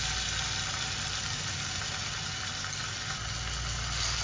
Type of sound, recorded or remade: recorded